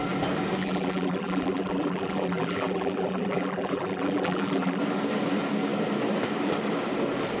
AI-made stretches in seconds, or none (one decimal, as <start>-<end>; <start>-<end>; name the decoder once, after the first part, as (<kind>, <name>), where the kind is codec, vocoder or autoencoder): 0.6-4.8 (vocoder, BigVGAN v2)